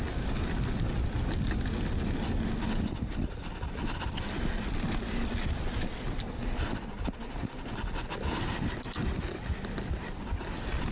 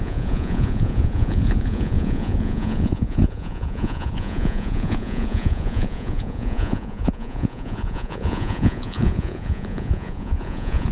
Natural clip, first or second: first